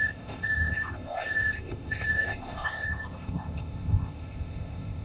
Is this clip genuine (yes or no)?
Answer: no